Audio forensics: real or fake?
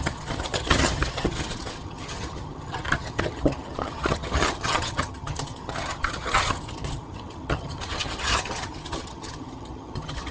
fake